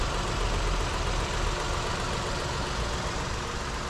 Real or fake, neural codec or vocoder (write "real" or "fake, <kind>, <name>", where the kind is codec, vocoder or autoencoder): real